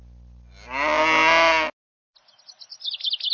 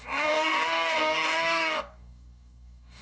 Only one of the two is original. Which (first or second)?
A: first